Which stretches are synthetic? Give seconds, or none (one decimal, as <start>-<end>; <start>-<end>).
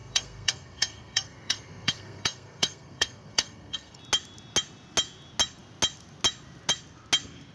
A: 0.0-4.0